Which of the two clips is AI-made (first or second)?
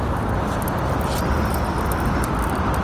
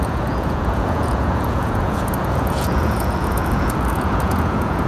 second